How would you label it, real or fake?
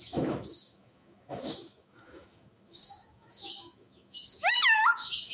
fake